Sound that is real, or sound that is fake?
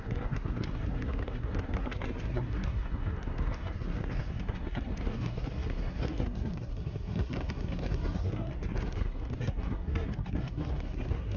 fake